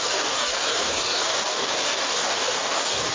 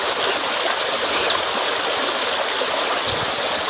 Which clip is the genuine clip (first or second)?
second